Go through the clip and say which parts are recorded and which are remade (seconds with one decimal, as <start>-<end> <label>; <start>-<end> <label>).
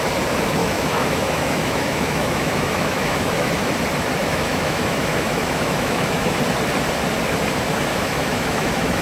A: 0.0-0.6 recorded; 0.6-3.5 remade; 3.5-4.2 recorded; 4.2-6.4 remade; 6.4-7.9 recorded; 7.9-9.0 remade